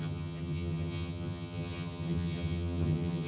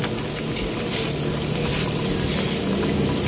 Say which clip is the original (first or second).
second